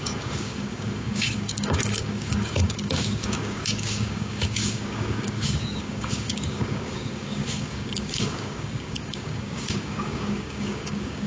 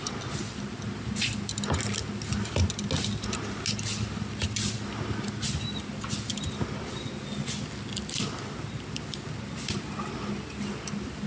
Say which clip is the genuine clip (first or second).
second